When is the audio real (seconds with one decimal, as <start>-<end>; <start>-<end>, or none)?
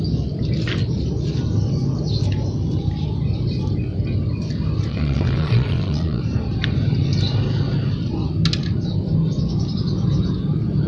0.0-4.9; 6.2-10.9